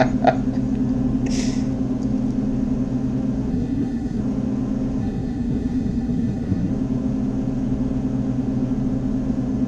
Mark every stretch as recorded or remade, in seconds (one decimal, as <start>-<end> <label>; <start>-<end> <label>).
0.0-3.5 recorded; 3.5-4.2 remade; 4.2-5.0 recorded; 5.0-6.7 remade; 6.7-9.7 recorded